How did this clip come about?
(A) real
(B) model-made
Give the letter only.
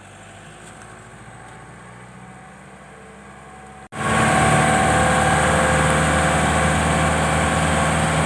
A